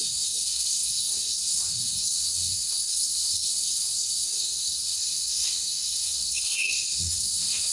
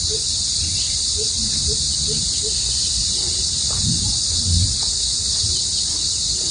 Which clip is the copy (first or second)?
first